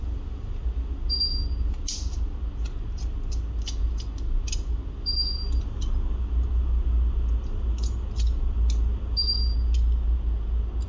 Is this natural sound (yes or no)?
yes